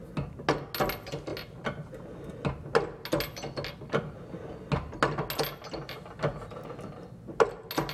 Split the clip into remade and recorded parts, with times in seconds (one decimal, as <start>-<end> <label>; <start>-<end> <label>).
0.0-7.9 recorded